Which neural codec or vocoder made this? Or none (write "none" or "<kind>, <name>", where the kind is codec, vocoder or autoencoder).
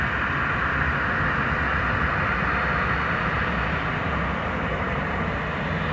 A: none